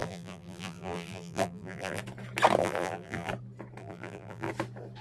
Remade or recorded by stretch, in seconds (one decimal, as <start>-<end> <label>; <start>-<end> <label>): 0.0-2.0 remade; 2.0-2.6 recorded; 2.6-3.3 remade; 3.3-3.8 recorded; 3.8-4.5 remade; 4.5-5.0 recorded